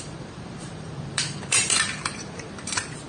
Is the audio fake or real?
fake